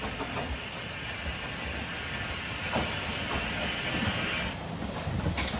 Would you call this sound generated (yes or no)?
no